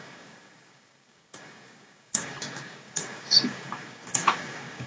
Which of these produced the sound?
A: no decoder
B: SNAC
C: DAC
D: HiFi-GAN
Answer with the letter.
C